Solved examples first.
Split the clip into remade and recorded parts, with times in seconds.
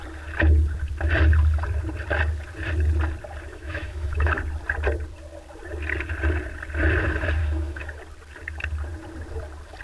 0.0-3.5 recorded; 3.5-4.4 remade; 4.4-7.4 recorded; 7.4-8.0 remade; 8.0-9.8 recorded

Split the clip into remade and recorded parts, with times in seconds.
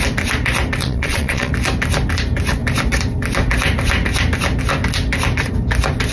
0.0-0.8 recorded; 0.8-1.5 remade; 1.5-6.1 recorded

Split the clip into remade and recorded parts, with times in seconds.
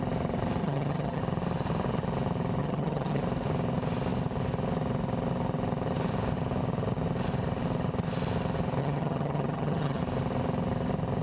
0.0-0.6 recorded; 0.6-1.2 remade; 1.2-2.6 recorded; 2.6-3.2 remade; 3.2-8.8 recorded; 8.8-10.0 remade; 10.0-11.2 recorded